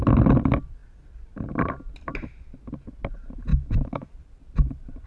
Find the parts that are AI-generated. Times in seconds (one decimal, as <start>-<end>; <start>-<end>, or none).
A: 3.5-4.1